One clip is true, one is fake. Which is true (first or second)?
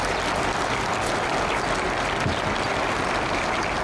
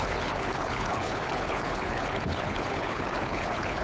first